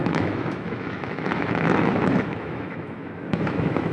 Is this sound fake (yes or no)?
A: yes